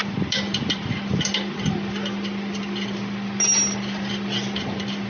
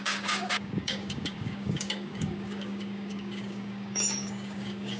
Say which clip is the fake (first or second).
second